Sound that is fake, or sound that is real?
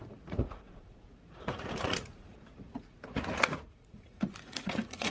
fake